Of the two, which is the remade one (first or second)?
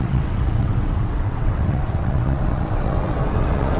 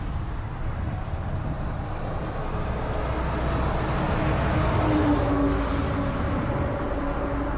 first